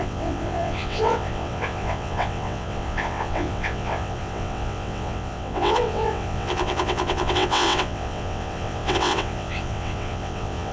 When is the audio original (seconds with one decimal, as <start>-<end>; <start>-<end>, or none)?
none